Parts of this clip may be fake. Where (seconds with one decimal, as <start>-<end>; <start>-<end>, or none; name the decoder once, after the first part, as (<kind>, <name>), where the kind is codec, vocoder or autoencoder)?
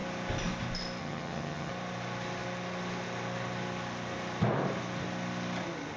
1.0-1.7 (vocoder, HiFi-GAN)